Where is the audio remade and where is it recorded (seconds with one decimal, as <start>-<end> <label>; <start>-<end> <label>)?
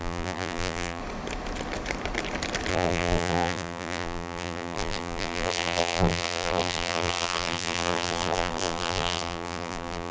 0.0-1.0 remade; 1.0-2.7 recorded; 2.7-10.1 remade